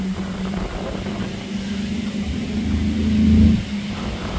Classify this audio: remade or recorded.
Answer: recorded